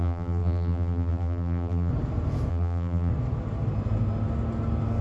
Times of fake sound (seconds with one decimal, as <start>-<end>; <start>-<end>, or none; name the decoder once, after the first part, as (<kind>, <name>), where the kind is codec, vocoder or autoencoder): 0.0-1.9 (vocoder, BigVGAN v2); 2.5-3.1

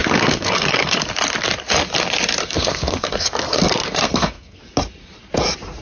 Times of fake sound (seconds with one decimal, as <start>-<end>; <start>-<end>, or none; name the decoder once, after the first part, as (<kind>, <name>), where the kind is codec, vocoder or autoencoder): 0.0-1.0 (codec, SNAC); 2.4-4.6

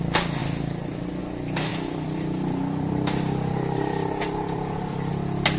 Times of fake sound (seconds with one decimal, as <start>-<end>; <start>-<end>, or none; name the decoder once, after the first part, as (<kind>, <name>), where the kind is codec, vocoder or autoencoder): 1.7-5.1 (vocoder, BigVGAN v2)